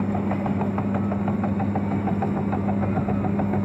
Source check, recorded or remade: recorded